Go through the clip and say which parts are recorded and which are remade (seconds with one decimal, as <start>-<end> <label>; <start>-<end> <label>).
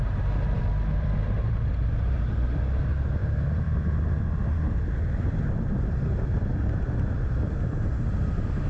0.0-1.2 recorded; 1.2-2.6 remade; 2.6-3.2 recorded; 3.2-4.0 remade; 4.0-8.7 recorded